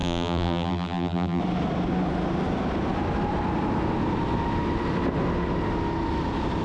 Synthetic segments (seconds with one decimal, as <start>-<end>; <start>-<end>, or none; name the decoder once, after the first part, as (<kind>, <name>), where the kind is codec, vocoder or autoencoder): 0.0-1.4 (vocoder, BigVGAN v2)